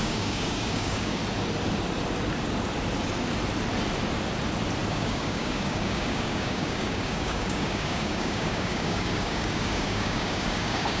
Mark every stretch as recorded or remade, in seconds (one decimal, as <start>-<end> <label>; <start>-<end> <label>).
0.0-1.2 remade; 1.2-4.9 recorded; 4.9-11.0 remade